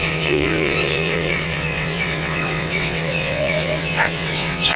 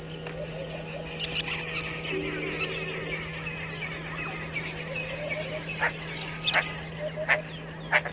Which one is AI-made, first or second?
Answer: first